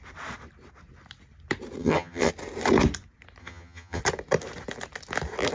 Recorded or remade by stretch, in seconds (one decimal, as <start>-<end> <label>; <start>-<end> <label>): 0.0-1.8 recorded; 1.8-2.3 remade; 2.3-3.4 recorded; 3.4-4.0 remade; 4.0-5.5 recorded